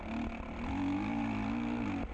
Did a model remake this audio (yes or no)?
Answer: no